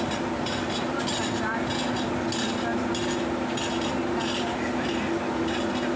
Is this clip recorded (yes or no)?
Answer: yes